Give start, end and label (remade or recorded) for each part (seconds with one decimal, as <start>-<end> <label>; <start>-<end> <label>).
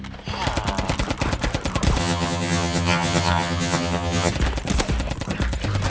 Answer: 0.0-2.0 recorded; 2.0-4.3 remade; 4.3-5.9 recorded